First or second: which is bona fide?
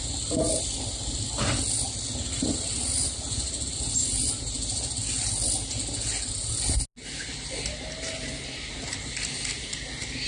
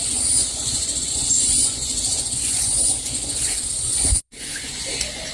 first